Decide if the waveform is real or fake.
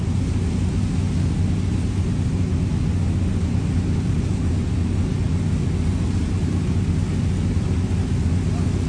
real